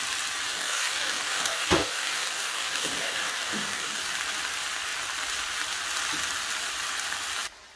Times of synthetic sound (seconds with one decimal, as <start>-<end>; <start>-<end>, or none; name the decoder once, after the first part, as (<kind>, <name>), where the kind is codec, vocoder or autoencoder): 0.5-4.0 (codec, DAC)